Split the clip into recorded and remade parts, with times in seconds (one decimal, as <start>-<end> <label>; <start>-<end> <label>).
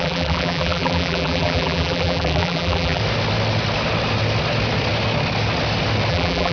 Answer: 0.0-3.0 remade; 3.0-6.1 recorded; 6.1-6.5 remade